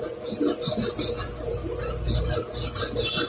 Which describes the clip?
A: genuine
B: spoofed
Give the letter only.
A